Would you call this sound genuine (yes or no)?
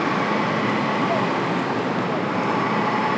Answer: yes